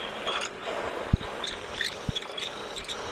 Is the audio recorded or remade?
remade